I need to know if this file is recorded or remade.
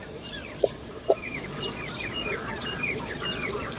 remade